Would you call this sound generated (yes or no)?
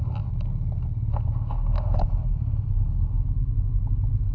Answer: no